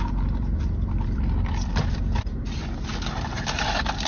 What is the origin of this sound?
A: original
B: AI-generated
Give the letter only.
B